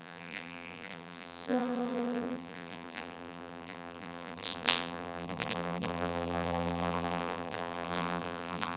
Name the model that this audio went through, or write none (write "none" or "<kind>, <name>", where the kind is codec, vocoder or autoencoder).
vocoder, BigVGAN v2